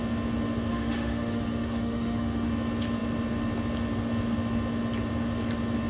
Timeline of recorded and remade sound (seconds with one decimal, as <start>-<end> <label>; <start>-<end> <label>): 0.0-0.7 recorded; 0.7-2.5 remade; 2.5-5.9 recorded